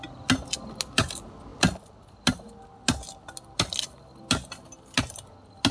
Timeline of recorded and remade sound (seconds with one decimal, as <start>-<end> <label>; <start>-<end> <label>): 0.0-5.7 recorded